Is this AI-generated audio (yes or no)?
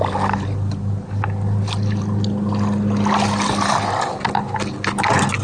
no